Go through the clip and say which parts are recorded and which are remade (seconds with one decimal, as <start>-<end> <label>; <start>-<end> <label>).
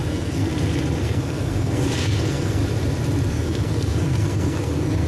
0.0-0.5 remade; 0.5-1.0 recorded; 1.0-2.6 remade; 2.6-3.3 recorded; 3.3-5.1 remade